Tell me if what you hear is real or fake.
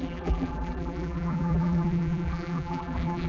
fake